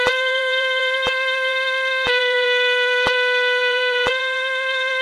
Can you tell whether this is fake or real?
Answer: fake